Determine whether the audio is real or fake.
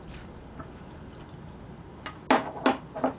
real